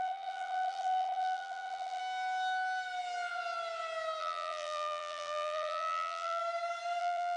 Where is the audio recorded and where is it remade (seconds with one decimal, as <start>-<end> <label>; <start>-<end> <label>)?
0.0-2.0 remade; 2.0-4.2 recorded; 4.2-6.4 remade; 6.4-7.0 recorded; 7.0-7.4 remade